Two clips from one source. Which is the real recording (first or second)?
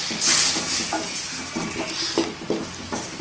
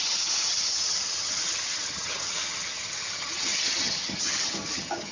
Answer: first